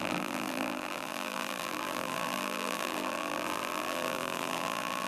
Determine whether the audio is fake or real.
fake